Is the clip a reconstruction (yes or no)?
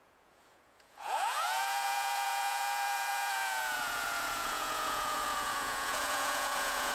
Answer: yes